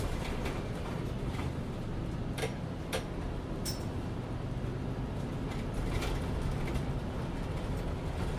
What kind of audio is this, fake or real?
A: real